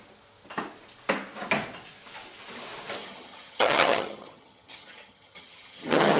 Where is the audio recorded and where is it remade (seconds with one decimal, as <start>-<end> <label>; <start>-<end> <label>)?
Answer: 0.0-3.0 recorded; 3.0-6.2 remade